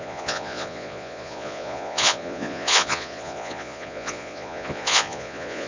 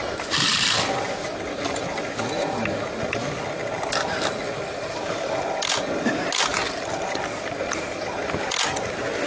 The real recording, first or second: second